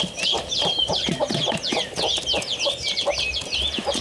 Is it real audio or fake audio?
real